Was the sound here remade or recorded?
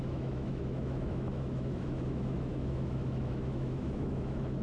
remade